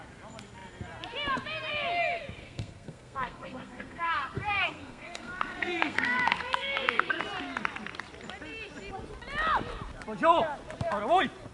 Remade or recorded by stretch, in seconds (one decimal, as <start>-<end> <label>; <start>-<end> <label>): 0.0-2.4 recorded; 2.4-7.2 remade; 7.2-11.5 recorded